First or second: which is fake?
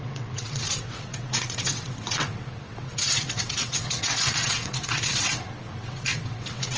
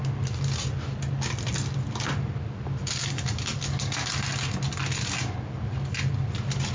first